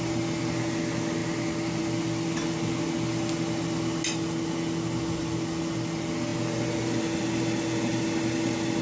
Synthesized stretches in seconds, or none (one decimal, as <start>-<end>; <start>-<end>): none